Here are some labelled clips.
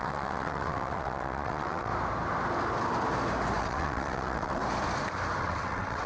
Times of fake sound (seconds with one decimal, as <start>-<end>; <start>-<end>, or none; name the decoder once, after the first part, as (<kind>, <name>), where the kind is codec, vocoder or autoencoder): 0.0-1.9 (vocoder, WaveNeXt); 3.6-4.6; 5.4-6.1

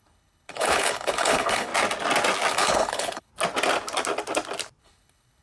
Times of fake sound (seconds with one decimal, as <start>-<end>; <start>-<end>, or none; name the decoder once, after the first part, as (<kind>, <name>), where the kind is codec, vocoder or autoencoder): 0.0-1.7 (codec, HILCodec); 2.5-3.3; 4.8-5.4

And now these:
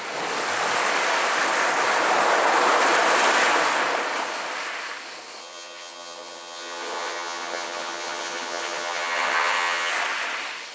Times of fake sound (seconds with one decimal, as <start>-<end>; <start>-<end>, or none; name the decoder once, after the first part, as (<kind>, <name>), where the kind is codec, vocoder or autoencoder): 5.4-9.9 (vocoder, HiFi-GAN)

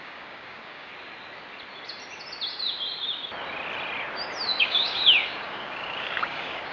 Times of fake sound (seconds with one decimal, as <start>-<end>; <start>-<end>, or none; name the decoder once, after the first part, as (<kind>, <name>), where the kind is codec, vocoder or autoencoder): 0.0-0.9 (codec, DAC); 4.6-6.7

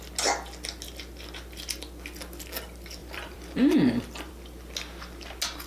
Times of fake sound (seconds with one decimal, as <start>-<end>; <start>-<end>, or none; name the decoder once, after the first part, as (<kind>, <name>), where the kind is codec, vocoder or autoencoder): 3.0-4.3 (vocoder, BigVGAN v2)

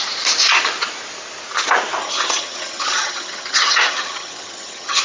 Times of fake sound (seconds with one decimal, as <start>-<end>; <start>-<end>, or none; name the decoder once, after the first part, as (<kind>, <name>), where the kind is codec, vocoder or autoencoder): 2.0-5.0 (vocoder, HiFi-GAN)